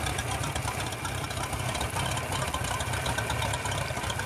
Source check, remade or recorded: recorded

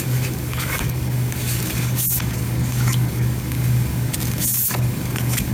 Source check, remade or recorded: remade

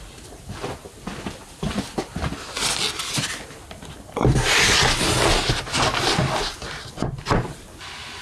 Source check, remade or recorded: recorded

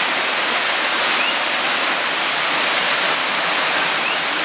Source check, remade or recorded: recorded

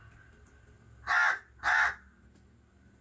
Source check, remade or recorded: recorded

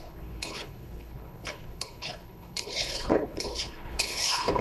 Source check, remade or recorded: remade